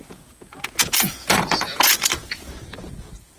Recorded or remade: remade